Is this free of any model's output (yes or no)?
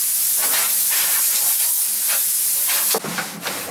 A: yes